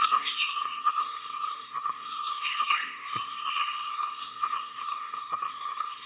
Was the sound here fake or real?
fake